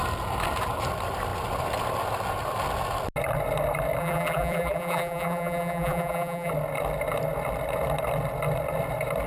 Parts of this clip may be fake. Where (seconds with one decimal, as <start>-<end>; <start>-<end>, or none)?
4.0-6.5